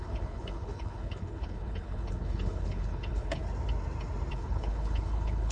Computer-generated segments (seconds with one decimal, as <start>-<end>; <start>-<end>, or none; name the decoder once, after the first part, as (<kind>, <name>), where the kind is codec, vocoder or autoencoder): 0.0-3.4 (codec, HILCodec); 4.3-5.5